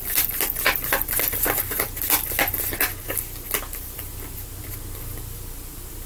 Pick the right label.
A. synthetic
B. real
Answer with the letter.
B